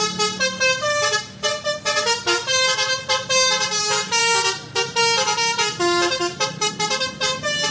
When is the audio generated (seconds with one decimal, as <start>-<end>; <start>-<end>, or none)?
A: none